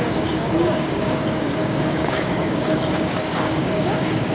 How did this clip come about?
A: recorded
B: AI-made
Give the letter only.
B